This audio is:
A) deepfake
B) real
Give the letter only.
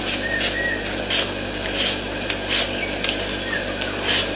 B